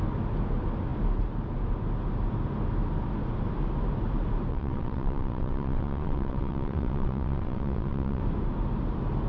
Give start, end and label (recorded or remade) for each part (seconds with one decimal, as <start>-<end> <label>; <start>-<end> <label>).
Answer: 0.0-4.5 recorded; 4.5-8.2 remade; 8.2-9.3 recorded